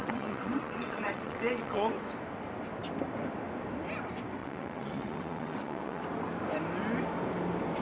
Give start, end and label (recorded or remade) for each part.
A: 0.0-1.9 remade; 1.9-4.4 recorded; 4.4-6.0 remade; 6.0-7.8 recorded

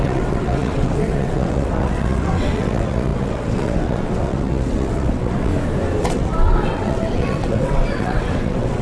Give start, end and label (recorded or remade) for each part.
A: 0.0-5.5 remade; 5.5-6.0 recorded; 6.0-8.8 remade

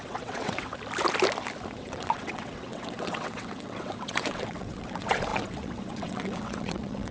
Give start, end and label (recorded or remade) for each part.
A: 0.0-0.7 remade; 0.7-1.8 recorded; 1.8-7.1 remade

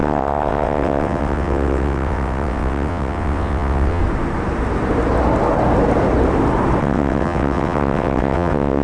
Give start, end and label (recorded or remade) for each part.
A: 0.0-4.0 remade; 4.0-6.8 recorded; 6.8-8.8 remade

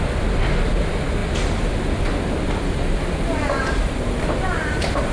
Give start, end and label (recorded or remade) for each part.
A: 0.0-5.1 recorded

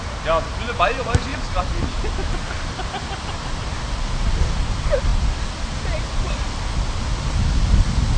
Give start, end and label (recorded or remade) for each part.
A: 0.0-8.2 recorded

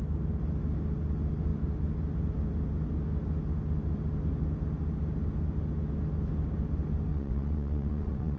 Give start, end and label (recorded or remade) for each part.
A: 0.0-7.1 recorded; 7.1-8.4 remade

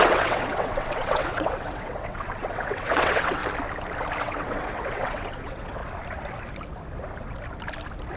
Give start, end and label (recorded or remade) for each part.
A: 0.0-3.4 remade; 3.4-4.2 recorded; 4.2-5.8 remade; 5.8-8.2 recorded